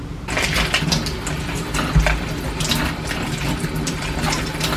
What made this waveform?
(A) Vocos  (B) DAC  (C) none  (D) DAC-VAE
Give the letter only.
C